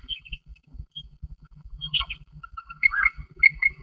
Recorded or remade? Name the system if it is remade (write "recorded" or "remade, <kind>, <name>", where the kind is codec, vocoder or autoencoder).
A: remade, codec, SNAC